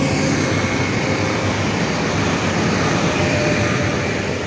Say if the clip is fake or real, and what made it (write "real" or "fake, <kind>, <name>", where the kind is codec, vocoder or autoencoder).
real